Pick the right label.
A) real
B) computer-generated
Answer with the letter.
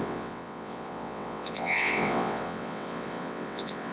B